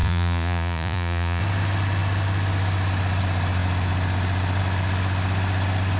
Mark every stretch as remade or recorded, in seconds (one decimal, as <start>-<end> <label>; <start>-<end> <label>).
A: 0.0-1.4 remade; 1.4-6.0 recorded